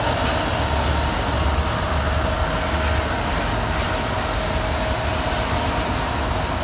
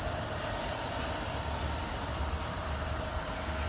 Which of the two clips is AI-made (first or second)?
second